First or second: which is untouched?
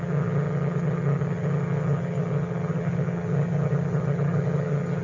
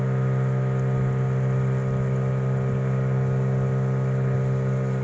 second